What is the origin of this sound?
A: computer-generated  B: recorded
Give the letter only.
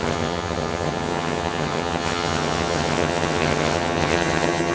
A